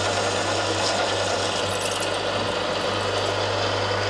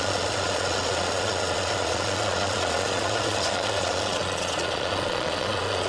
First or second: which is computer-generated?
second